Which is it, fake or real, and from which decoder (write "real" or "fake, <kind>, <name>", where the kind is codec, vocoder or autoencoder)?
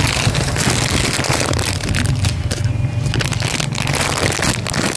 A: real